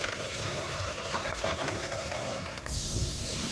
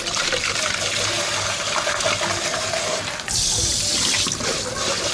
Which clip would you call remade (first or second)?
first